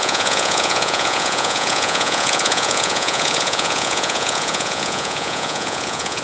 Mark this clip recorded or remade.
remade